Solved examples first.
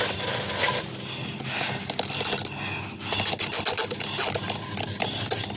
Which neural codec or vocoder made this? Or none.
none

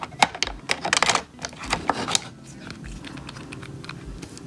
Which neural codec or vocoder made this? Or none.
none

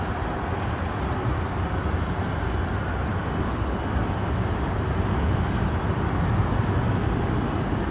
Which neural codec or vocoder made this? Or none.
none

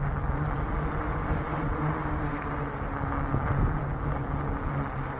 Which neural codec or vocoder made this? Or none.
none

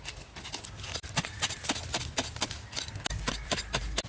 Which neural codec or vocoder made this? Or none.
none